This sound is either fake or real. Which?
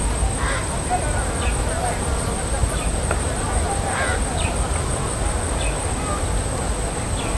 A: real